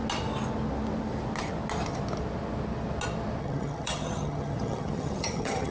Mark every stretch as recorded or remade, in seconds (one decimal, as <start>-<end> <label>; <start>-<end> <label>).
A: 0.0-3.4 recorded; 3.4-5.7 remade